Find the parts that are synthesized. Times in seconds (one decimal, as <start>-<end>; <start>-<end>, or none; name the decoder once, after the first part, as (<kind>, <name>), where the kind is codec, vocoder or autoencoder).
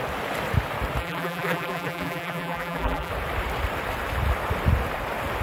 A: 1.0-3.1 (vocoder, BigVGAN v2)